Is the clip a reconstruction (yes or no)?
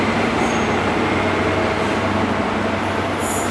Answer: no